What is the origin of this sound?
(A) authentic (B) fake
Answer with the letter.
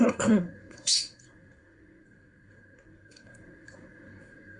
B